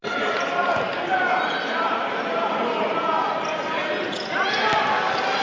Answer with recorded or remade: recorded